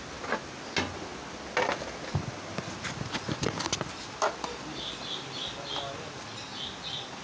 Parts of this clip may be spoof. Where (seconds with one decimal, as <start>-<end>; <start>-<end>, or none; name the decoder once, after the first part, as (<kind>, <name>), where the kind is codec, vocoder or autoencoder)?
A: none